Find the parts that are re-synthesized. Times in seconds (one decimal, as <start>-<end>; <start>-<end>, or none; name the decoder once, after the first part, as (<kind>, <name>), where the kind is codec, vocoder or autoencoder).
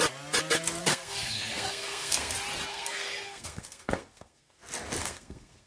0.8-2.3 (codec, SNAC); 2.7-4.6; 5.0-5.7